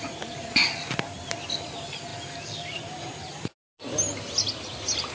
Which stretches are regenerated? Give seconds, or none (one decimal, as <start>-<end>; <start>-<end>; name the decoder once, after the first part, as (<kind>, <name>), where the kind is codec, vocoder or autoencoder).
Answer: none